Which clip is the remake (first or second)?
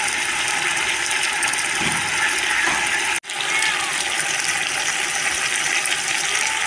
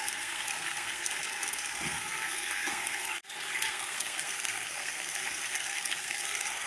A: second